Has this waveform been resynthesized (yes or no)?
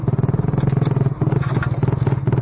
no